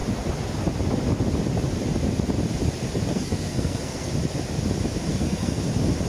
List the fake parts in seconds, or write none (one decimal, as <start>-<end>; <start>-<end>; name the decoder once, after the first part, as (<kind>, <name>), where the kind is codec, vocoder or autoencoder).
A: 3.1-4.1 (codec, SNAC); 5.1-5.6